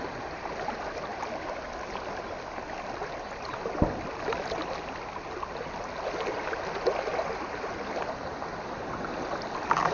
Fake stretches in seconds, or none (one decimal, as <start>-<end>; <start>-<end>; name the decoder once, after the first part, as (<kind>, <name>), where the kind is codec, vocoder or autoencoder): none